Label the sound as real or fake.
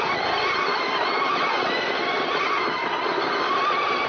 real